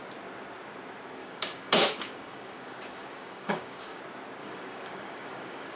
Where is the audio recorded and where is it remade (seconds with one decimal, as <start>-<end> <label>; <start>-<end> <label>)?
0.0-1.2 recorded; 1.2-4.0 remade; 4.0-4.4 recorded; 4.4-5.8 remade